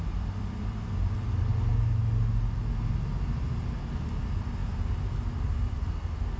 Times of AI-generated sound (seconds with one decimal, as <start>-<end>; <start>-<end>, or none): none

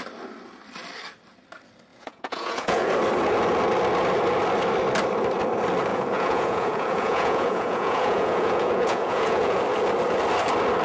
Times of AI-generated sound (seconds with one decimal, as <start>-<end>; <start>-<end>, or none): 1.9-2.9; 5.9-9.6

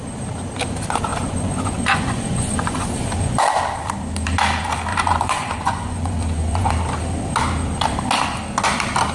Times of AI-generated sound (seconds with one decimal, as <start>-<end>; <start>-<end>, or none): 1.1-3.6; 4.9-6.7